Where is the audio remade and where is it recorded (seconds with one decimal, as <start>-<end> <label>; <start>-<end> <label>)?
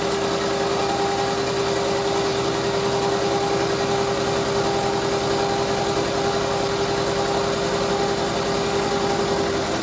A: 0.0-9.8 recorded